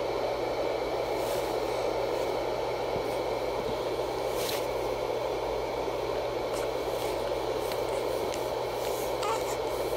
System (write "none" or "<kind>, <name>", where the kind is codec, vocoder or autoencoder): none